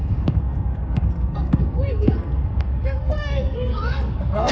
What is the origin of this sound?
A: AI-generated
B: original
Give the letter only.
A